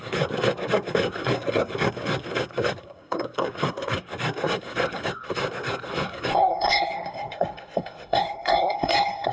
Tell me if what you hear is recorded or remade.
remade